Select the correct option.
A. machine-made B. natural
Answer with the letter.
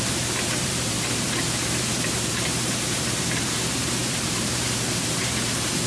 A